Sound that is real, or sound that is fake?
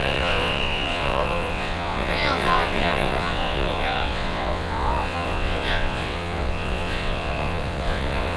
fake